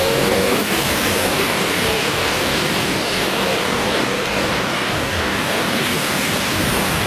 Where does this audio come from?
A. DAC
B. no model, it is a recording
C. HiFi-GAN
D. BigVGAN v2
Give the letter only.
A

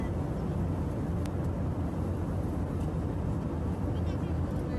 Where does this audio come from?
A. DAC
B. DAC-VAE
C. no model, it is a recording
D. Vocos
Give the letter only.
C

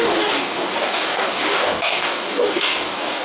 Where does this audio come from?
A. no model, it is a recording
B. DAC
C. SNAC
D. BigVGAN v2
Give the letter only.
B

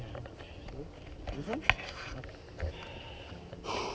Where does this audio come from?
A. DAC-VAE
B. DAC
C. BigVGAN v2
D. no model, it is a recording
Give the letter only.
D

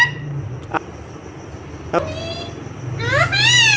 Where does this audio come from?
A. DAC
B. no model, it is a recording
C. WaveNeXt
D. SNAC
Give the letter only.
B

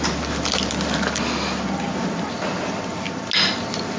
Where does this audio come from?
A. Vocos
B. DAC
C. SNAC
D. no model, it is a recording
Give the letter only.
D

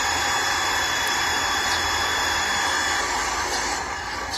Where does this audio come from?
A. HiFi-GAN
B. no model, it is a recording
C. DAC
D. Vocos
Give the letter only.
B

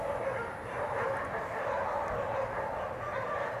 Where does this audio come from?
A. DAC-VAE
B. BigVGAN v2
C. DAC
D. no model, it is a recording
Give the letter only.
D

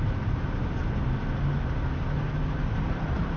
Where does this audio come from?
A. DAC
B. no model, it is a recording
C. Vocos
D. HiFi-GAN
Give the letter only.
B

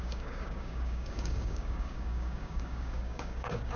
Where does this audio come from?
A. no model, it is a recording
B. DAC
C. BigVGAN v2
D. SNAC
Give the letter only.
B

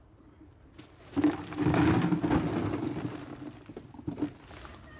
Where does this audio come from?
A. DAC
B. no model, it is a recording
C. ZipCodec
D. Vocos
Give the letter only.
B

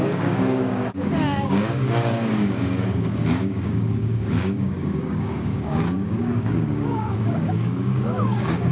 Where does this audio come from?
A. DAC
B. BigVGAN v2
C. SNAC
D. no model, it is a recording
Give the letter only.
A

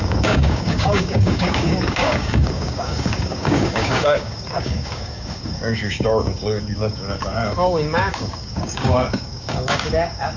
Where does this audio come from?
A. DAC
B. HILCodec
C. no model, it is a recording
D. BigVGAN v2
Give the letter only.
A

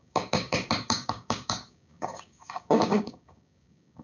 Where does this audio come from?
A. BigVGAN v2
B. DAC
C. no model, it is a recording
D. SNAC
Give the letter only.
B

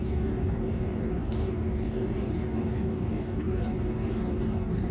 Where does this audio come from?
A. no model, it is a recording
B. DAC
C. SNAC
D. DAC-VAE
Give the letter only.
B